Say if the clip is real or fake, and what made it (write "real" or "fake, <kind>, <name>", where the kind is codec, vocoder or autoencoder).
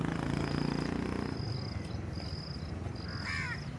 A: real